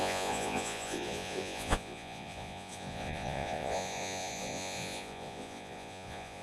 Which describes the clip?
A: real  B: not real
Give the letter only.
B